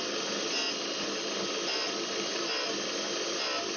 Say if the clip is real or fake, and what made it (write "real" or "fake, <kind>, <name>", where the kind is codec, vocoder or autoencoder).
real